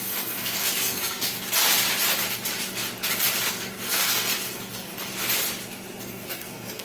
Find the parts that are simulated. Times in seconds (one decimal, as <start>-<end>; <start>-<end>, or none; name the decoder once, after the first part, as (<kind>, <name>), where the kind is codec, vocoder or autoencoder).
0.0-1.3 (codec, SNAC); 3.5-5.1; 6.0-6.8